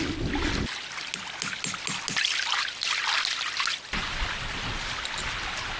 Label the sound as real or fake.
real